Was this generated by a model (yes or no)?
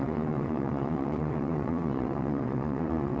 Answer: yes